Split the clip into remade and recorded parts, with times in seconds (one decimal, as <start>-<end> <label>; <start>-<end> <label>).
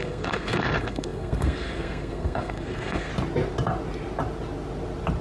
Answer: 0.0-3.1 remade; 3.1-5.2 recorded